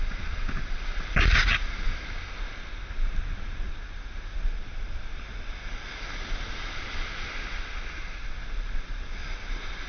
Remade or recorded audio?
recorded